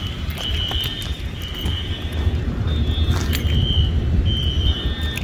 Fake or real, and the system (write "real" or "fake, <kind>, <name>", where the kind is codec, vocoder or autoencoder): real